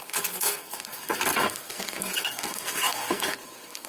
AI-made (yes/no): yes